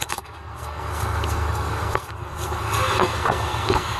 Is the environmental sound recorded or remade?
remade